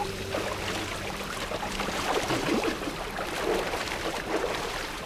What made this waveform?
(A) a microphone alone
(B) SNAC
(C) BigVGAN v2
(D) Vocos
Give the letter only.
A